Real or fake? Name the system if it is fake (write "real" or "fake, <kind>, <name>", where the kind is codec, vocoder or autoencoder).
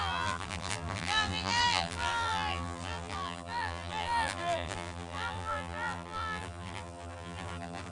fake, vocoder, BigVGAN v2